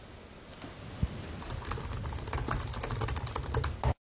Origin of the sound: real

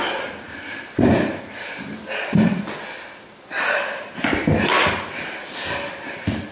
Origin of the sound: real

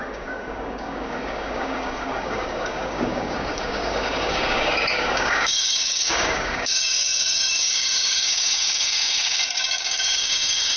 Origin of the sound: fake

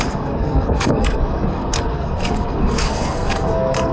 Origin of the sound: fake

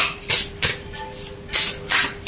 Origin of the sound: real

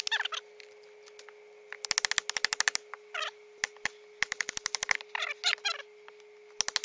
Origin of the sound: real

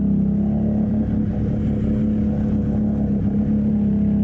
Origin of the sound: real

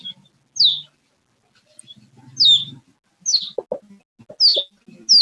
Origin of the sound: real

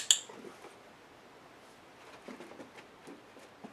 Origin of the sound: real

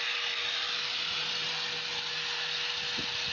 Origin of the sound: real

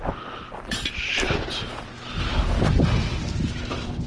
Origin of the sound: real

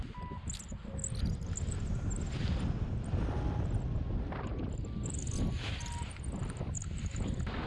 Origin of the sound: real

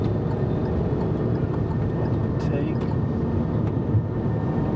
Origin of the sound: real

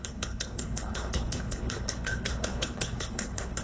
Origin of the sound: fake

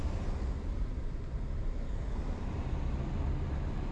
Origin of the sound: real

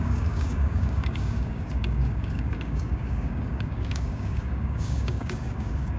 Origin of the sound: fake